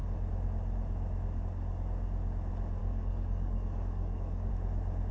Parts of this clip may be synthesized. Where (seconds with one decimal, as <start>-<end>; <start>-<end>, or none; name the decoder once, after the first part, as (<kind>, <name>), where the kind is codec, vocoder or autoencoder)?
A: 2.8-4.5 (codec, DAC)